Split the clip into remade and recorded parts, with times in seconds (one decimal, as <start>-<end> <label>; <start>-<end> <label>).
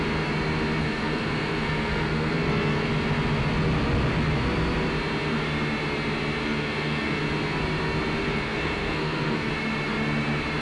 0.0-0.8 recorded; 0.8-2.9 remade; 2.9-6.4 recorded; 6.4-7.2 remade; 7.2-8.2 recorded; 8.2-9.5 remade; 9.5-10.6 recorded